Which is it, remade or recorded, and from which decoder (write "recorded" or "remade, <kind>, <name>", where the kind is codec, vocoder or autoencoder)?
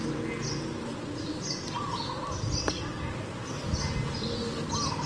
recorded